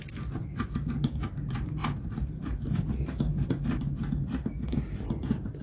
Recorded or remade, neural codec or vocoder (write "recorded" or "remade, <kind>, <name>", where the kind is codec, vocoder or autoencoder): recorded